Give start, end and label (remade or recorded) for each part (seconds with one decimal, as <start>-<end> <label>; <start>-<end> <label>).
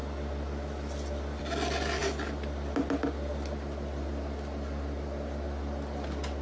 0.0-6.4 recorded